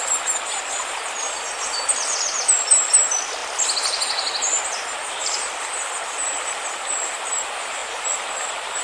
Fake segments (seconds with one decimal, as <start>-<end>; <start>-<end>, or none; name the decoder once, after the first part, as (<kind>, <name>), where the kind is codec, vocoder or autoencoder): none